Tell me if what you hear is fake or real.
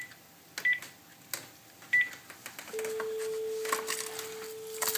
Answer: real